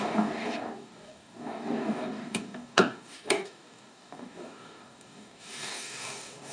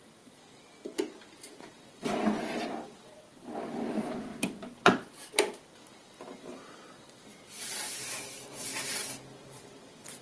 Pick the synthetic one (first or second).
first